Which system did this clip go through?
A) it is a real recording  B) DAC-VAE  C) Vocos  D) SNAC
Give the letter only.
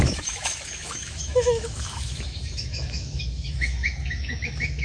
B